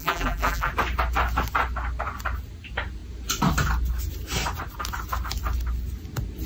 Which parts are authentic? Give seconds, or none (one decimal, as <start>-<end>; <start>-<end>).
0.7-6.5

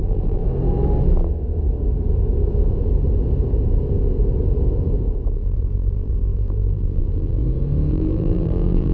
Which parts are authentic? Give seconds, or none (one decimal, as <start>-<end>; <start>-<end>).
0.4-5.3; 7.4-7.9

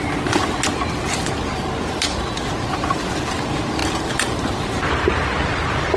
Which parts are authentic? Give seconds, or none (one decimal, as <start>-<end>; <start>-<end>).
0.0-3.8; 4.4-6.0

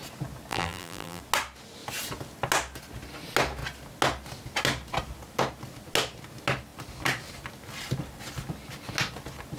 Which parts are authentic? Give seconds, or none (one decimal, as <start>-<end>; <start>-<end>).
0.0-0.5; 1.2-9.6

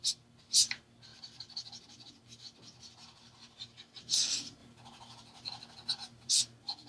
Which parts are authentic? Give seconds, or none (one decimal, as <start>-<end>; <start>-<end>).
0.0-6.9

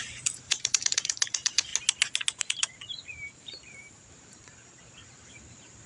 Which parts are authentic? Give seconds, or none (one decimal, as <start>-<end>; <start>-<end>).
1.7-2.4

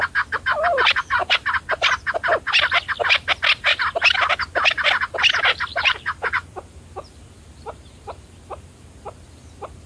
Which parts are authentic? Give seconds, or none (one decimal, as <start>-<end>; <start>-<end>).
0.0-5.7